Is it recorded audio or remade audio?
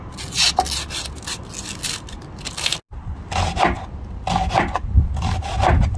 recorded